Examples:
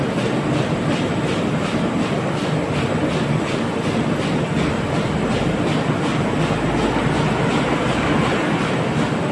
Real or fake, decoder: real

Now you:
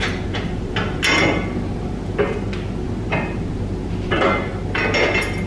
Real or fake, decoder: real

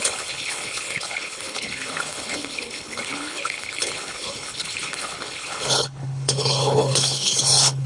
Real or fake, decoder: fake, codec, HILCodec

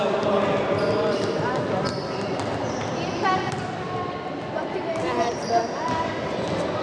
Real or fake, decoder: real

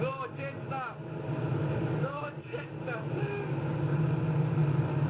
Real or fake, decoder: real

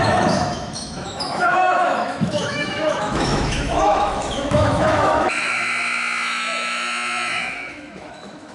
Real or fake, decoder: fake, autoencoder, DAC-VAE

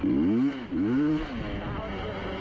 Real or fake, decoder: real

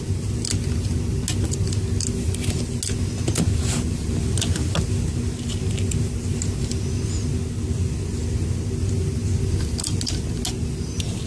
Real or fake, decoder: real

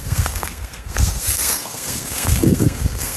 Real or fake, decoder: fake, codec, SNAC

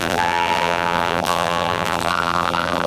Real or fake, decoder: fake, vocoder, BigVGAN v2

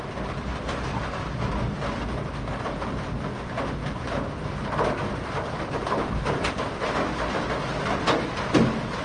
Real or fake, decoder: real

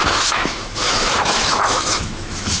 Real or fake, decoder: fake, autoencoder, DAC-VAE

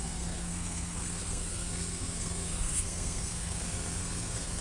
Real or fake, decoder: fake, codec, SNAC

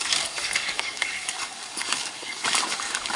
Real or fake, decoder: fake, codec, DAC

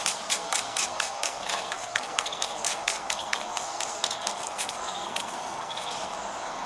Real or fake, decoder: fake, codec, SNAC